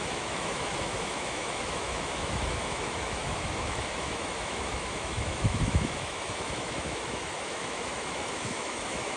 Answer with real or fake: fake